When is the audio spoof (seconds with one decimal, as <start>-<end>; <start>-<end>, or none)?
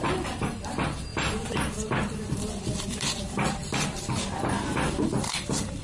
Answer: 0.0-0.5; 1.1-4.5